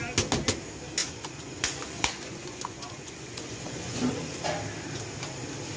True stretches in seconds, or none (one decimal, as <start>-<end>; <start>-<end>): 0.0-1.0; 4.0-5.8